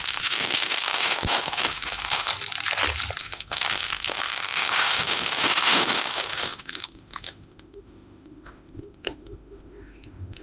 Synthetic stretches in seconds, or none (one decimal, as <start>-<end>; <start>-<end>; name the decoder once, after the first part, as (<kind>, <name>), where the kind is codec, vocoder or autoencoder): 0.0-2.3 (autoencoder, DAC-VAE); 3.2-10.4